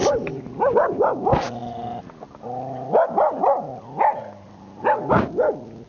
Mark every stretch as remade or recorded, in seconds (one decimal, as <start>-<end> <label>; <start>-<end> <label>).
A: 0.0-5.9 recorded